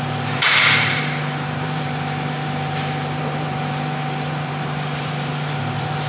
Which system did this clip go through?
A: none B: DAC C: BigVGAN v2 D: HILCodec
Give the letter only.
C